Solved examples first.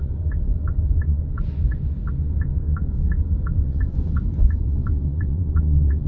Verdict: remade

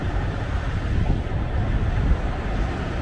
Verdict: remade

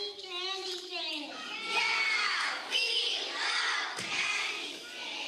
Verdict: remade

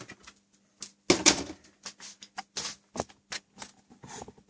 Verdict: recorded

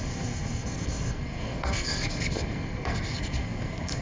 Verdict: remade